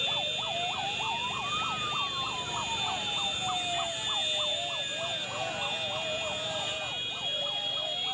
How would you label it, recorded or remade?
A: recorded